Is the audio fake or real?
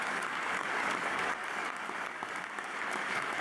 fake